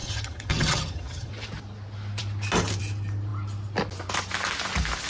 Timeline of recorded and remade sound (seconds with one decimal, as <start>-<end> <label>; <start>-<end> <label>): 0.0-1.3 remade; 1.3-5.1 recorded

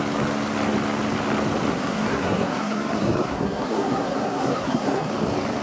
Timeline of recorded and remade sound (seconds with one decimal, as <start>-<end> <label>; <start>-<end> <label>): 0.0-1.7 recorded; 1.7-5.1 remade; 5.1-5.6 recorded

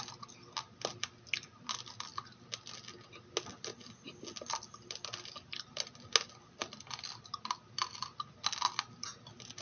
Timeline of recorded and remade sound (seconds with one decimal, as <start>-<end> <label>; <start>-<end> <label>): 0.0-9.6 recorded

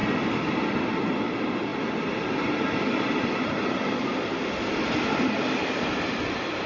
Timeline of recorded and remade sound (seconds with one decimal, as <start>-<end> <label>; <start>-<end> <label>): 0.0-6.7 recorded

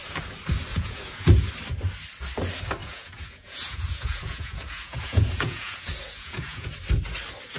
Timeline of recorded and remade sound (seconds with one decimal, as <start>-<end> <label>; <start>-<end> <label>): 0.0-0.7 recorded; 0.7-1.5 remade; 1.5-2.8 recorded; 2.8-6.7 remade; 6.7-7.6 recorded